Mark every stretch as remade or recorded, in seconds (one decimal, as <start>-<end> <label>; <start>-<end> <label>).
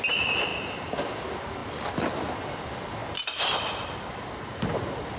0.0-5.2 recorded